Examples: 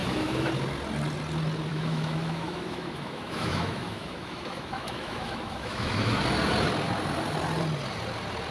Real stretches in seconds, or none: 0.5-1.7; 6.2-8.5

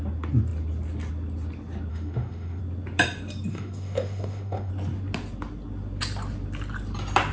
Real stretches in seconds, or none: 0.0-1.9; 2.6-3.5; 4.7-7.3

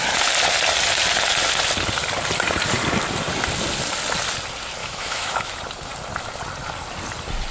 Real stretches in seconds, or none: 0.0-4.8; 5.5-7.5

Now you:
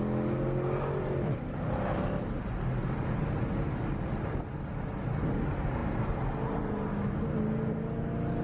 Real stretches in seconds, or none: 0.0-8.4